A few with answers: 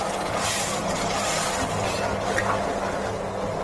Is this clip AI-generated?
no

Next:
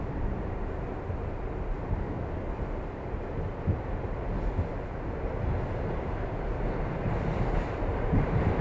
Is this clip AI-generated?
no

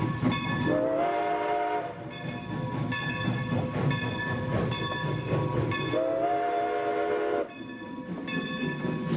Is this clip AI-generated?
no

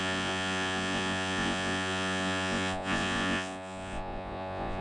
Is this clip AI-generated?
yes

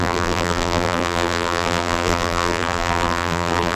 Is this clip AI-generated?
yes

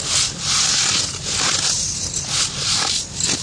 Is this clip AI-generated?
no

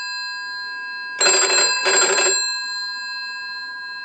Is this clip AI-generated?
no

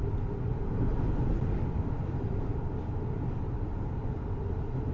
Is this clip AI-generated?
no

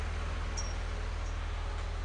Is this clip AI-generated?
no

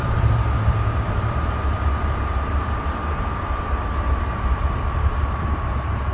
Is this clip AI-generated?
yes